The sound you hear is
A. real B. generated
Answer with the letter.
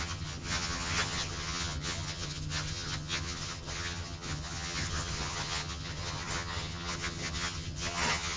B